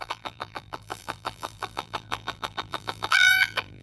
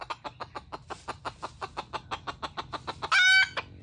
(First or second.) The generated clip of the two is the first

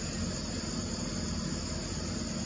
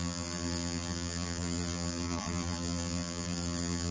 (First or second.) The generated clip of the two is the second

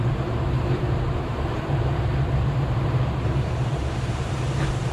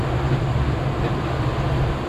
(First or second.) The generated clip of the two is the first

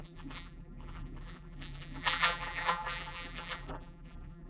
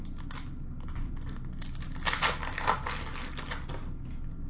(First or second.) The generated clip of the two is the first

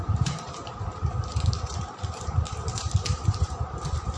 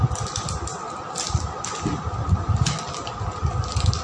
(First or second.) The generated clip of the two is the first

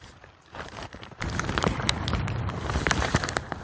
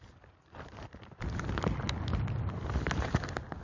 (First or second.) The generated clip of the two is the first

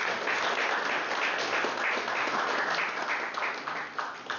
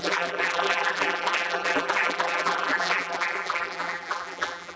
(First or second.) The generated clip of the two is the second